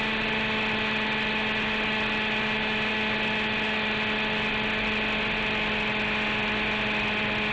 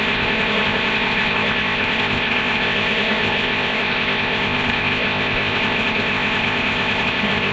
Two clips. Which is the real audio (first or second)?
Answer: first